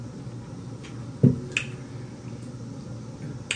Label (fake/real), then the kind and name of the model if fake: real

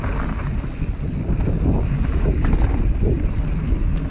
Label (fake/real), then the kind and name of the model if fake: real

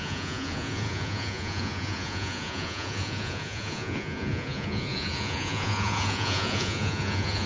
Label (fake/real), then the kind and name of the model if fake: fake, vocoder, Vocos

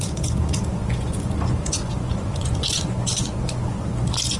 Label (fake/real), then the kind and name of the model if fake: fake, vocoder, Vocos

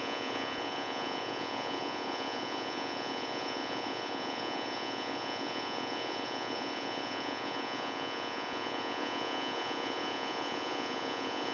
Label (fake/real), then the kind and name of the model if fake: fake, vocoder, Vocos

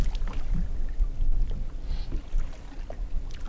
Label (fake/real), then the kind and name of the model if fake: real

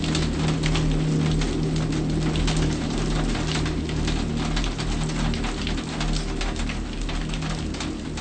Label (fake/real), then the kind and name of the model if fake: real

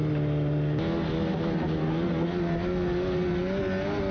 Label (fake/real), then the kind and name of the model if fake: real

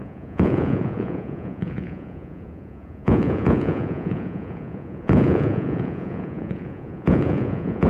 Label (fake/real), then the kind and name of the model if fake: fake, vocoder, Vocos